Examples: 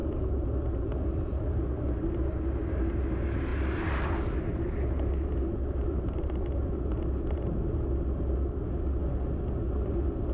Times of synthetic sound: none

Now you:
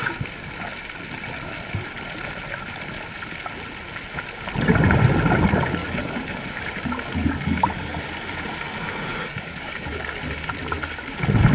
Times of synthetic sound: 5.8-6.6; 7.2-7.9; 9.1-10.2

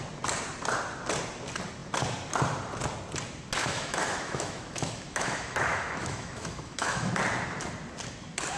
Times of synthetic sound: 3.6-7.1